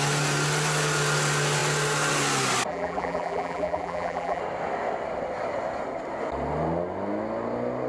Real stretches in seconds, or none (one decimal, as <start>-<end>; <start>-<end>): 0.0-2.7; 4.4-7.9

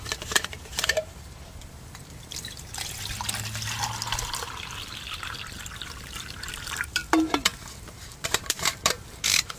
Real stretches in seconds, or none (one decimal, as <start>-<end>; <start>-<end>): 1.1-5.8; 7.0-7.9